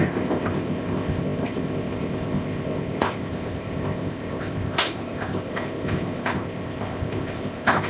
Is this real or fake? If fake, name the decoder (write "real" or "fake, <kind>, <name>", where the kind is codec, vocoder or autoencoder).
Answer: fake, codec, ZipCodec